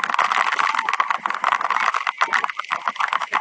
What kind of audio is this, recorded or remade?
recorded